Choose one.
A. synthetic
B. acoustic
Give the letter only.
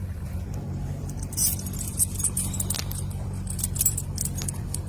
A